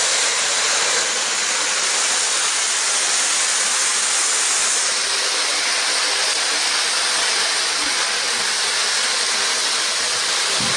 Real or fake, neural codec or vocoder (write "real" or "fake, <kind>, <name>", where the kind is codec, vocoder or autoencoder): real